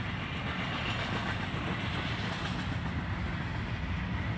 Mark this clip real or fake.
real